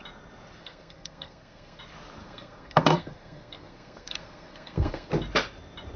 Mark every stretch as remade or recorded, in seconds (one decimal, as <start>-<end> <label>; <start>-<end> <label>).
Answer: 0.0-0.6 recorded; 0.6-1.8 remade; 1.8-2.2 recorded; 2.2-5.1 remade; 5.1-6.0 recorded